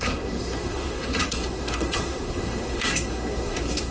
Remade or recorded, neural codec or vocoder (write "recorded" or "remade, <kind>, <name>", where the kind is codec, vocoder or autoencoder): remade, codec, SNAC